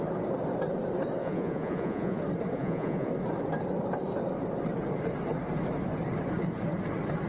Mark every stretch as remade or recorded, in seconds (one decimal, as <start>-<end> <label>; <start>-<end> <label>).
0.0-1.2 recorded; 1.2-2.2 remade; 2.2-2.6 recorded; 2.6-3.1 remade; 3.1-7.3 recorded